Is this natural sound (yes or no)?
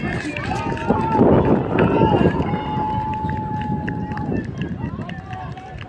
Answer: yes